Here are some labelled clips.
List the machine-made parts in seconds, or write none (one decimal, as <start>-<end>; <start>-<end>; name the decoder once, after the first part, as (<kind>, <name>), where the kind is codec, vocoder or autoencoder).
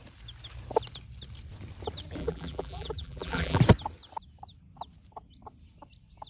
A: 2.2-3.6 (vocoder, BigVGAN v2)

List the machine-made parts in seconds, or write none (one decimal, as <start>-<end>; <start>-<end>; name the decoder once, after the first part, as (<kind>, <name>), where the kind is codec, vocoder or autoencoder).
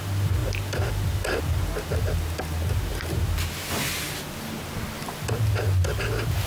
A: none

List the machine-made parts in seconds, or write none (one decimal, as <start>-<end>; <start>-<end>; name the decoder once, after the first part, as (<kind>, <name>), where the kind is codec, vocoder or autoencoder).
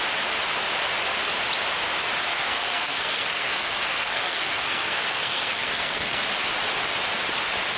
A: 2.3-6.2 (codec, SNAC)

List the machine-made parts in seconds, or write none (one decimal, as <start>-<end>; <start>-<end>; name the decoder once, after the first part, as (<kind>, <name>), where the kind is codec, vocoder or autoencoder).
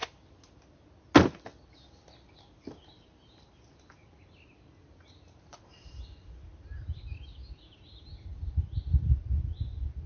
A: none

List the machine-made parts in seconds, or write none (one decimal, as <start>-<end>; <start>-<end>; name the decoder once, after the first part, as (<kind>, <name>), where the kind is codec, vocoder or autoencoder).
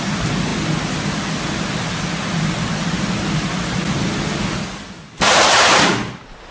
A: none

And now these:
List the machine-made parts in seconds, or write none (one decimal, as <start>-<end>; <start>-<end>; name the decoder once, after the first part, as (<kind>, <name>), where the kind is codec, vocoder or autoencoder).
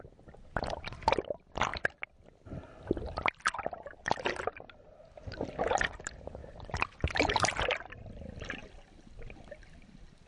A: 6.4-7.6 (vocoder, BigVGAN v2)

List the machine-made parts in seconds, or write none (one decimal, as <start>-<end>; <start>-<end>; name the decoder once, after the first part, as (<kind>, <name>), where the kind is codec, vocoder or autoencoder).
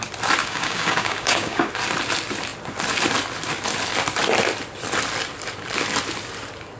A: 0.4-1.7 (codec, DAC)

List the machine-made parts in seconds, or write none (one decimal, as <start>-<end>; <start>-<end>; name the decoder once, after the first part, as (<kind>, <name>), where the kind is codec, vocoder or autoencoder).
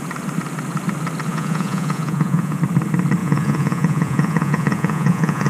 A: 1.3-2.6 (vocoder, Vocos); 3.2-5.5